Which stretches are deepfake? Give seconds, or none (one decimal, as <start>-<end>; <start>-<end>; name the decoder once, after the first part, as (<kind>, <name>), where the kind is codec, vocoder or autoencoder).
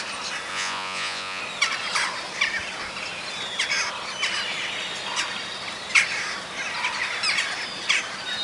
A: 0.5-1.4 (vocoder, Vocos)